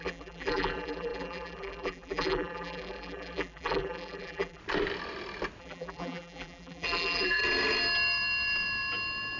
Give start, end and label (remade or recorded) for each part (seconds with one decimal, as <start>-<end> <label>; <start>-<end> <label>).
0.0-4.6 remade; 4.6-5.6 recorded; 5.6-7.4 remade; 7.4-9.4 recorded